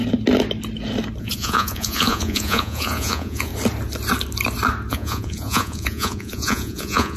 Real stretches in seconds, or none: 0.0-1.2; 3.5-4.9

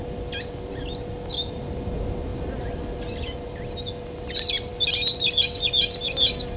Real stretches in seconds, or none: 0.0-2.3; 2.9-6.6

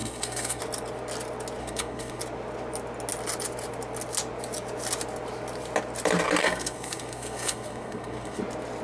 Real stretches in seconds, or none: 0.6-1.6; 2.2-6.4; 8.4-8.8

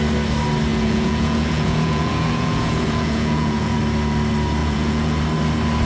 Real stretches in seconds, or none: 0.0-0.7; 3.8-4.6; 5.2-5.9

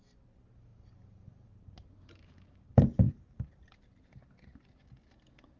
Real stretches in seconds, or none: 0.0-0.7; 3.8-5.6

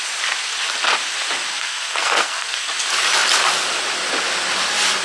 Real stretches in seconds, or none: 0.0-1.5; 2.7-5.0

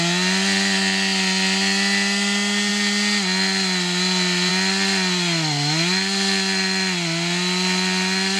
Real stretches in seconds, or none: 0.0-8.4

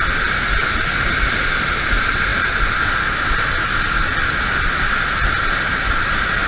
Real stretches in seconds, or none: 0.0-6.5